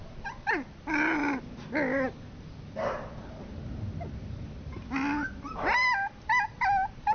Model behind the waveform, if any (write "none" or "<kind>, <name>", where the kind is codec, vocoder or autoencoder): none